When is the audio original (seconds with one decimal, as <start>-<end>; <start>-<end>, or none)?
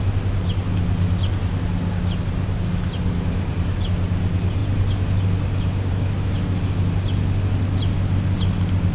0.0-8.9